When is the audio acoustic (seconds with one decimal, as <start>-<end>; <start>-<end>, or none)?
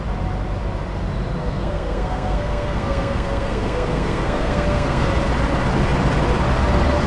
0.0-1.4; 5.1-7.1